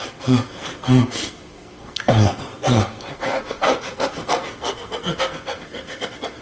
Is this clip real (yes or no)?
no